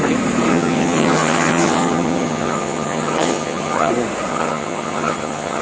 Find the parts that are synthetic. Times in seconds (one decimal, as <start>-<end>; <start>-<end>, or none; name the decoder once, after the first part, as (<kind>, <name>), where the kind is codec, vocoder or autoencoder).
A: 0.5-3.9 (vocoder, HiFi-GAN); 4.3-5.6

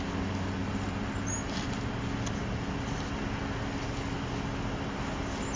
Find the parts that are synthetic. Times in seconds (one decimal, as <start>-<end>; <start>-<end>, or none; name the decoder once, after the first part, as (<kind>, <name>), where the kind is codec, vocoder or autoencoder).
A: none

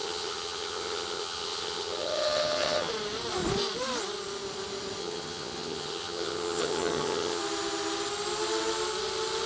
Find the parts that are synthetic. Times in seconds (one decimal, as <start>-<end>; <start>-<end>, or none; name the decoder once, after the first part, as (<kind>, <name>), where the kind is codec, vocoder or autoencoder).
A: 0.0-2.9 (vocoder, HiFi-GAN); 5.0-7.4

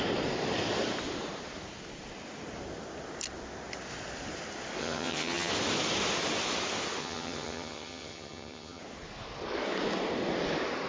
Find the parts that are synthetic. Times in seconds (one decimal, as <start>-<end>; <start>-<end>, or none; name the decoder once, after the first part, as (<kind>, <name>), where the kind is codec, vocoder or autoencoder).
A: 4.8-5.5 (vocoder, HiFi-GAN); 7.0-8.8